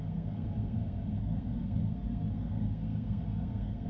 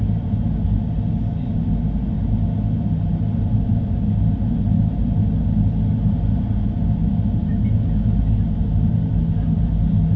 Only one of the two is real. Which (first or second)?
second